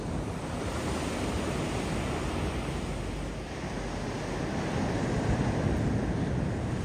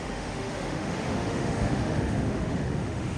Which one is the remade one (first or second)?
second